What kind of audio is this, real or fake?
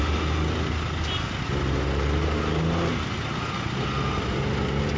real